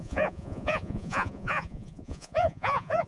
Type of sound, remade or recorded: remade